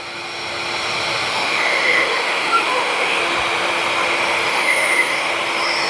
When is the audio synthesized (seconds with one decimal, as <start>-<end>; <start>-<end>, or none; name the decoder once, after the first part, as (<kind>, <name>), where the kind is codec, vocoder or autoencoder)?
1.3-3.2 (autoencoder, DAC-VAE); 4.5-5.3